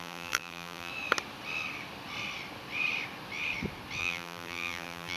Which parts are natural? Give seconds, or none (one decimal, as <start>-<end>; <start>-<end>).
0.9-4.0